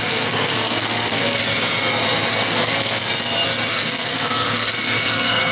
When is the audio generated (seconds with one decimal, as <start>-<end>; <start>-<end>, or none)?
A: 0.0-1.4; 2.3-3.0; 3.7-5.5